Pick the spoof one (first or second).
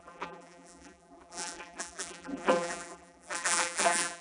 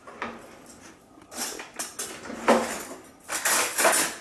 first